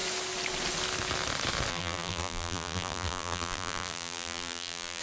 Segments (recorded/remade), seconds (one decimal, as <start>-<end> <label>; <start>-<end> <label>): 0.0-1.7 recorded; 1.7-5.0 remade